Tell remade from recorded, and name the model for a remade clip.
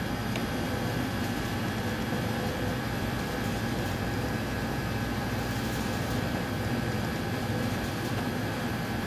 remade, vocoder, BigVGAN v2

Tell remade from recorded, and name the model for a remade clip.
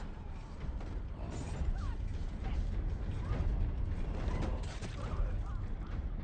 remade, vocoder, BigVGAN v2